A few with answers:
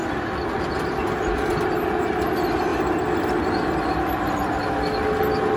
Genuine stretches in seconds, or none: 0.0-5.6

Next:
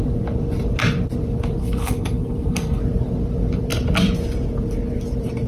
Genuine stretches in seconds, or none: 0.0-1.6; 2.8-5.5

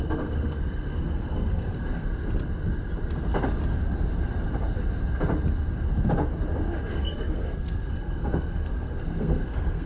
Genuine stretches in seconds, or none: 2.1-6.9

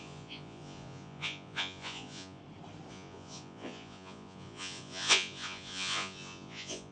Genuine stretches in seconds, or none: 2.4-2.9

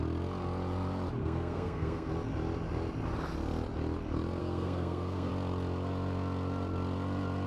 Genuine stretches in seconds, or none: 0.0-1.2; 2.1-4.4; 5.3-7.5

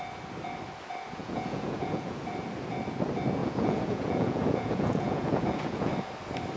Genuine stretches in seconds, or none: 0.0-1.2; 2.3-3.4; 5.9-6.6

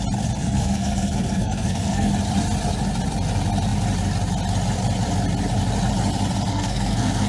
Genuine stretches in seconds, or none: 0.0-0.4; 2.1-6.5